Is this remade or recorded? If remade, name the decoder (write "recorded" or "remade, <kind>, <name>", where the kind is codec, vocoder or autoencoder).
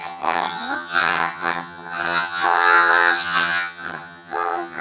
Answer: remade, vocoder, HiFi-GAN